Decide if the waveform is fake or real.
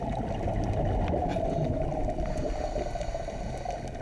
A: real